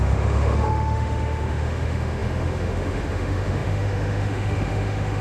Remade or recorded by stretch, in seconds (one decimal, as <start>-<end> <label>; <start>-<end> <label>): 0.0-5.2 remade